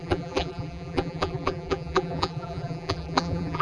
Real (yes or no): no